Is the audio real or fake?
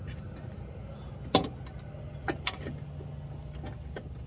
real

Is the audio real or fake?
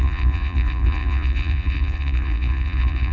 fake